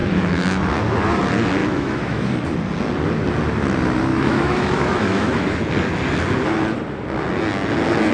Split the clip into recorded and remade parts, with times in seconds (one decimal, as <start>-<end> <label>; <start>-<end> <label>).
0.0-0.6 remade; 0.6-1.6 recorded; 1.6-2.3 remade; 2.3-4.1 recorded; 4.1-5.6 remade; 5.6-8.1 recorded